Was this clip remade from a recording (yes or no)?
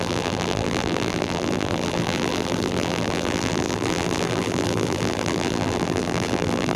yes